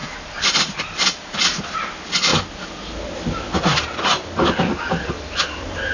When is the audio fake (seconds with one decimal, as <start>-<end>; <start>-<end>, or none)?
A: none